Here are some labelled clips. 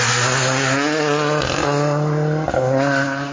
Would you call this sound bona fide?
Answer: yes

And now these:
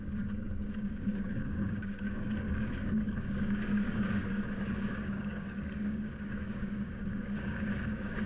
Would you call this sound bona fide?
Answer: no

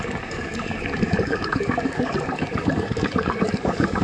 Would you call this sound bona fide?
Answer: no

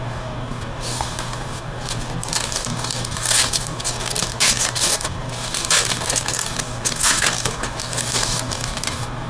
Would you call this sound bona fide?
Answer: no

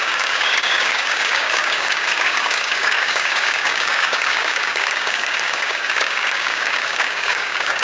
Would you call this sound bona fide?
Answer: no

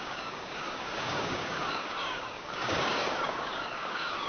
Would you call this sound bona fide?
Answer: no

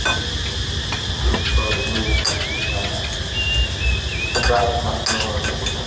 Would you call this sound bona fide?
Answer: yes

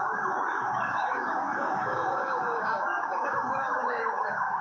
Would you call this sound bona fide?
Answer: no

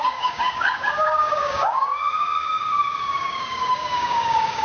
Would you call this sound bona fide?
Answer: no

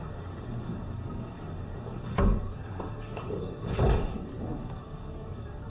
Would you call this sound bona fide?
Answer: no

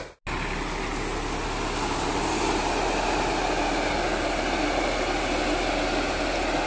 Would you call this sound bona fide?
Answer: yes